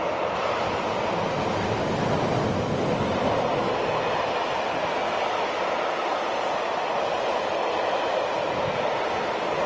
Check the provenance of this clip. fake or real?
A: real